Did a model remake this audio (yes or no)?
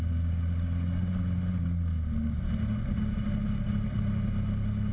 no